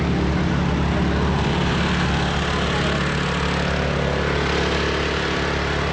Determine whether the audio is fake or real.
real